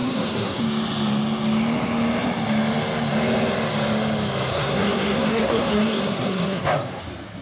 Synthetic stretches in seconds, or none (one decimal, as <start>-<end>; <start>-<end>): 0.0-0.6; 4.5-7.0